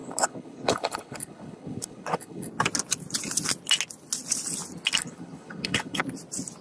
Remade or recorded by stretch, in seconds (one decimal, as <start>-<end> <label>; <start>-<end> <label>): 0.0-2.5 remade; 2.5-5.0 recorded; 5.0-6.0 remade; 6.0-6.6 recorded